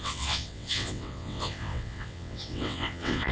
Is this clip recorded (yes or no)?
no